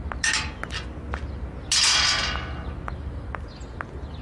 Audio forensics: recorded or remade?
recorded